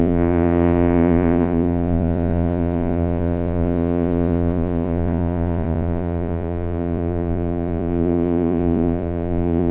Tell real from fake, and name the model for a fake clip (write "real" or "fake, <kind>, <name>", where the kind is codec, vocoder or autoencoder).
fake, vocoder, Vocos